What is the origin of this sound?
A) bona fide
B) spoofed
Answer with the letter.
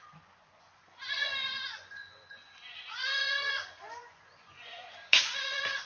B